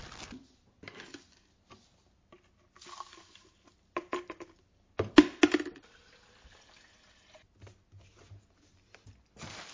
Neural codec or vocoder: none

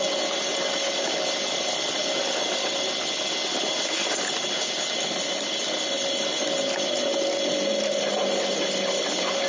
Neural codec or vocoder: none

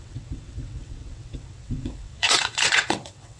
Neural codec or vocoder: vocoder, WaveNeXt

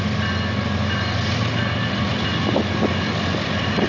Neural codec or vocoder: none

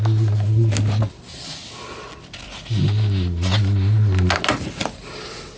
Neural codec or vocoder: none